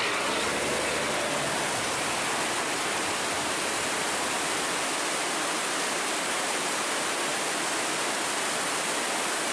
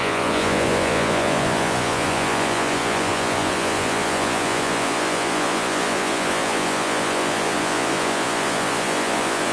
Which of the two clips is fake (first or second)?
second